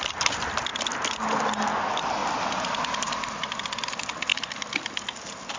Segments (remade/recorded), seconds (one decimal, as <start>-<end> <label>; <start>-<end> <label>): 0.0-0.7 recorded; 0.7-1.5 remade; 1.5-2.2 recorded; 2.2-3.6 remade; 3.6-5.6 recorded